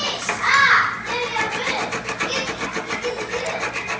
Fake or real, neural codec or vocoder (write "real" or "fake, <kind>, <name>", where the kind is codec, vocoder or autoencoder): real